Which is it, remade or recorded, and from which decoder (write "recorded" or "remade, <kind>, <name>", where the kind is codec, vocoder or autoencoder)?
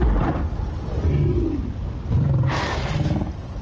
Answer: recorded